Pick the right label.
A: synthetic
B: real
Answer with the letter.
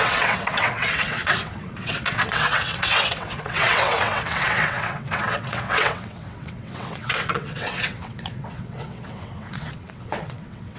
A